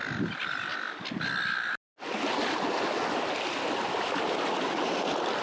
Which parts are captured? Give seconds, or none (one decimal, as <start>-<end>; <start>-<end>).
0.0-5.4